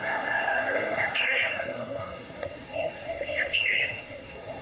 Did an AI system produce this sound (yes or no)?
yes